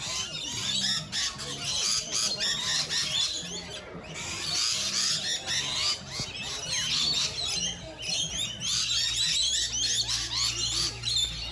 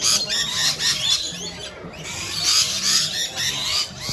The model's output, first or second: second